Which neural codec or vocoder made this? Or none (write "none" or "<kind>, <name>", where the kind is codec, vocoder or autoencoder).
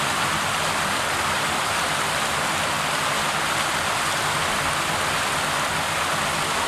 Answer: none